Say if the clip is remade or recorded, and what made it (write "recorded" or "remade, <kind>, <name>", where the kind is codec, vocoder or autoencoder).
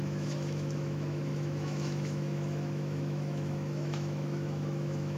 remade, autoencoder, DAC-VAE